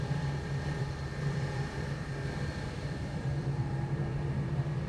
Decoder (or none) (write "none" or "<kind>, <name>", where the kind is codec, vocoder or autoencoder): vocoder, BigVGAN v2